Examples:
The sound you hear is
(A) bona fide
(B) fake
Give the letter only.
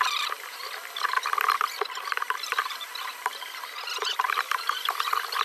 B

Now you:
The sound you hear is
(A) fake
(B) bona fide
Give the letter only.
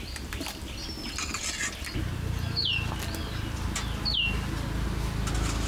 B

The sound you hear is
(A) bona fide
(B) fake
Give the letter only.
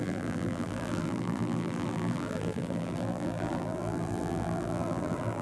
B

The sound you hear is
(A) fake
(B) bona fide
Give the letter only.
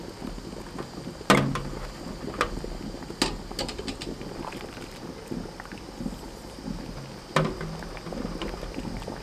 B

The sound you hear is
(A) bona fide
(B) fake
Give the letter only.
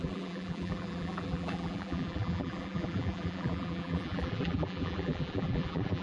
B